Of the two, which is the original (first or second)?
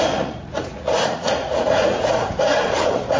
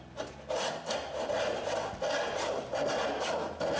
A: second